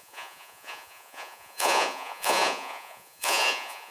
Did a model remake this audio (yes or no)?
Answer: yes